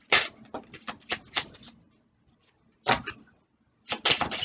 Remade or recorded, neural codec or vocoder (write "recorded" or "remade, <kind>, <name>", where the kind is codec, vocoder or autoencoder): recorded